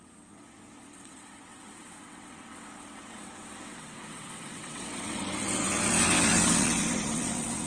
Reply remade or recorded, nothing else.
remade